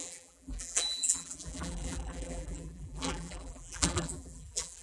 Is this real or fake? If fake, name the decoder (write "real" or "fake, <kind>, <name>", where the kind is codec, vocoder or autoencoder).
fake, vocoder, BigVGAN v2